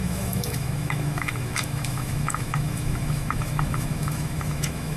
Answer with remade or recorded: remade